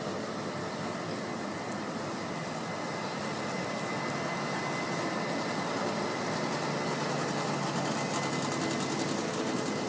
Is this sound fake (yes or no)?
no